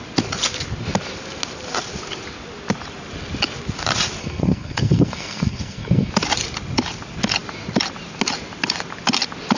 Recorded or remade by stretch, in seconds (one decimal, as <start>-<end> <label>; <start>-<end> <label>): 0.0-4.2 recorded; 4.2-6.1 remade; 6.1-9.6 recorded